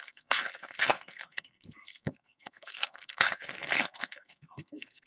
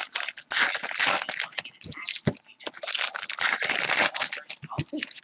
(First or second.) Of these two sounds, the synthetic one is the first